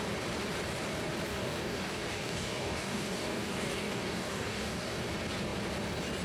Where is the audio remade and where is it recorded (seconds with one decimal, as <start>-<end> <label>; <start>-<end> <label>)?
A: 0.0-1.3 recorded; 1.3-5.0 remade; 5.0-6.2 recorded